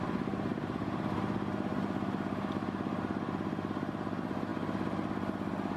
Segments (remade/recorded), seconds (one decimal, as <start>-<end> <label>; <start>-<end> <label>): 0.0-5.8 recorded